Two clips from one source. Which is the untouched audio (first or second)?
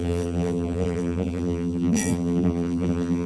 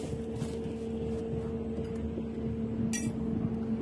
second